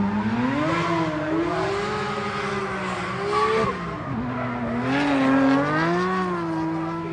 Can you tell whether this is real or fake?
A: real